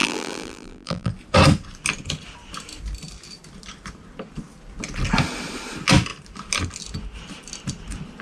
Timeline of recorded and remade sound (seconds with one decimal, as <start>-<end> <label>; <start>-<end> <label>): 0.0-1.1 remade; 1.1-8.2 recorded